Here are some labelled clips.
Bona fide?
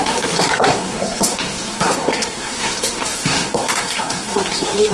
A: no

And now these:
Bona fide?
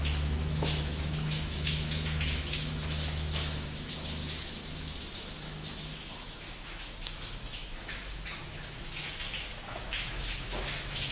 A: no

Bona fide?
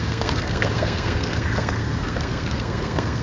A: no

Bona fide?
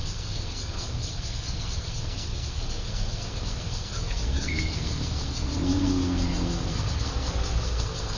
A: no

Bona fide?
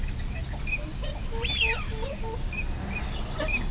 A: yes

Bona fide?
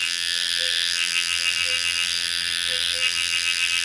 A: no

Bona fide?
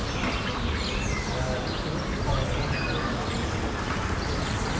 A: yes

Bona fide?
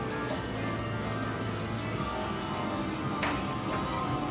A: yes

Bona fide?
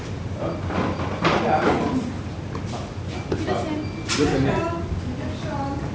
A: yes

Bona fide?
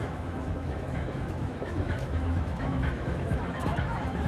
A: no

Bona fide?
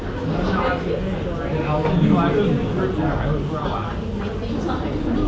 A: yes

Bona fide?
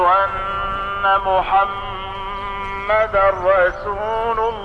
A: yes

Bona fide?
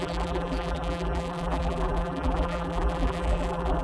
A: no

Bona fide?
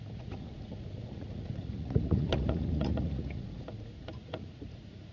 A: no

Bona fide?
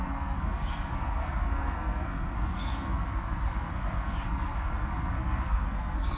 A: no